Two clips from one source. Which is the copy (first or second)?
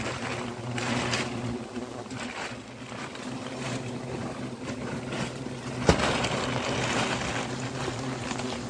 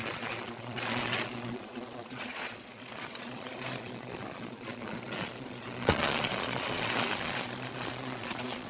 second